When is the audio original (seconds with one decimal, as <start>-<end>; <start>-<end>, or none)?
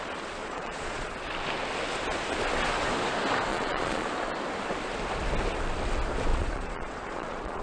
0.0-0.4; 1.1-3.5; 4.1-6.3